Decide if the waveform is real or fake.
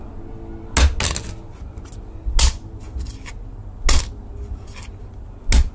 real